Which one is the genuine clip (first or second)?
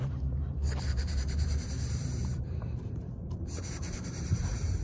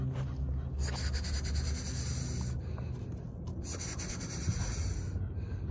second